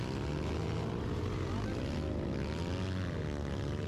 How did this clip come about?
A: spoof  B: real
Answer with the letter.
B